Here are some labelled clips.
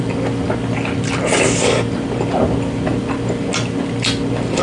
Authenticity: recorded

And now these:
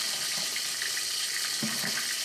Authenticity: recorded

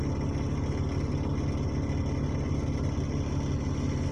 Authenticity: recorded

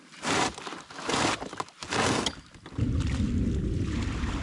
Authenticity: recorded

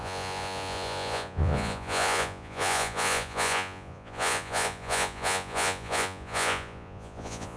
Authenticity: remade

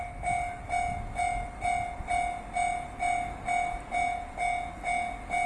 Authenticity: recorded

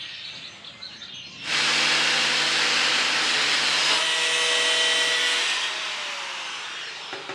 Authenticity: recorded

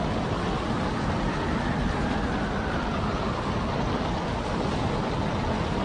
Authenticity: recorded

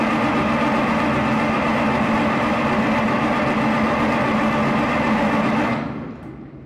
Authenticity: recorded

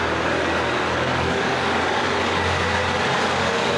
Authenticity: remade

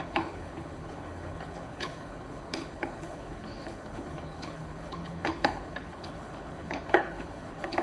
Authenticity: remade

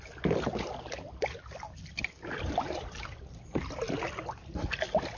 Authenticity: recorded